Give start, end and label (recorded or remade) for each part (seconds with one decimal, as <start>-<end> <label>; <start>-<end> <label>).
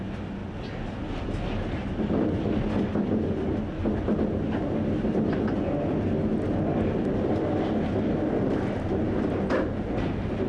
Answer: 0.0-10.5 recorded